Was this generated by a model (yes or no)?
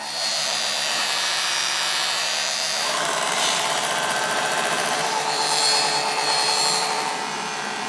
yes